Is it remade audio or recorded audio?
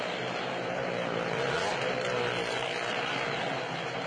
recorded